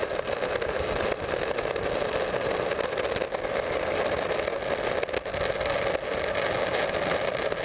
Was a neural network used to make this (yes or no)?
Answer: no